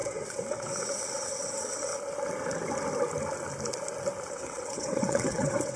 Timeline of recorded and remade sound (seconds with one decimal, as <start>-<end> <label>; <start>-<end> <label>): 0.0-1.9 remade; 1.9-4.3 recorded; 4.3-5.8 remade